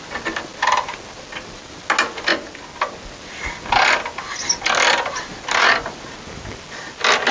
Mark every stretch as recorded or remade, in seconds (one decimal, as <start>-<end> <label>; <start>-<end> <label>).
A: 0.0-7.3 recorded